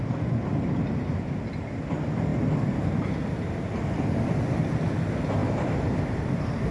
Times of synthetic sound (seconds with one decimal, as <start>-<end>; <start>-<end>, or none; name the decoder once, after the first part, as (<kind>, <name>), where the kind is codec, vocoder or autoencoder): 2.3-3.5 (vocoder, BigVGAN v2); 5.4-6.7